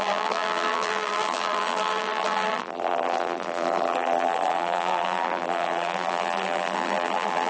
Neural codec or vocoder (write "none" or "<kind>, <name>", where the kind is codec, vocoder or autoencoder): vocoder, BigVGAN v2